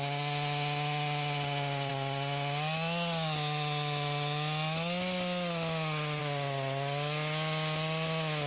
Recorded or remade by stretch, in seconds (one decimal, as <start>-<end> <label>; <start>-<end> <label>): 0.0-8.5 recorded